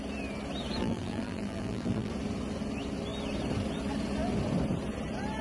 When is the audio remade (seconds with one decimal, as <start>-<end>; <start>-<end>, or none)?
0.8-2.1